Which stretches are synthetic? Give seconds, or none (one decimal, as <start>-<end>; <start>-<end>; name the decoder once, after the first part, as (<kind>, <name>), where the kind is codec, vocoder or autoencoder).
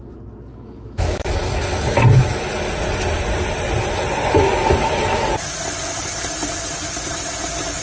0.5-1.3 (autoencoder, DAC-VAE)